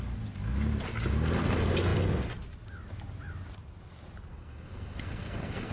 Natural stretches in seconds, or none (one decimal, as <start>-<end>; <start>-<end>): 0.0-4.3